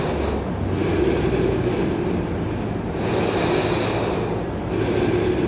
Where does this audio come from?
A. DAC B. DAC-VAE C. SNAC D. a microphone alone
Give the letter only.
D